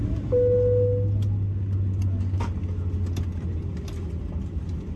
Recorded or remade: recorded